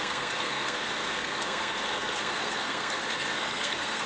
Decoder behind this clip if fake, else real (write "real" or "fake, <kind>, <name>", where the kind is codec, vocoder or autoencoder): fake, codec, SNAC